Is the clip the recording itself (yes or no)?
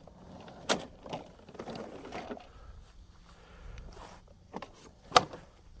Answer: no